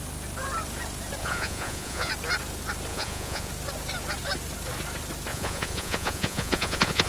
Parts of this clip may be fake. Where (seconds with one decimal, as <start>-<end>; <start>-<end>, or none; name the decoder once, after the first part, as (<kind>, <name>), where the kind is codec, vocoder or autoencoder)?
1.2-2.1 (vocoder, Vocos); 2.9-3.5; 5.3-7.1